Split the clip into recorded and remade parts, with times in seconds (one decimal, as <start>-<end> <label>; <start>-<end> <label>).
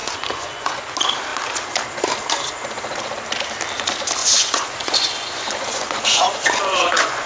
0.0-0.8 remade; 0.8-4.2 recorded; 4.2-7.3 remade